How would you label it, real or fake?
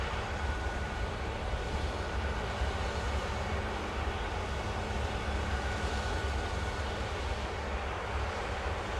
real